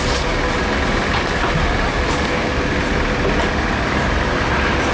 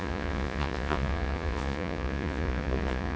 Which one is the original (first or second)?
first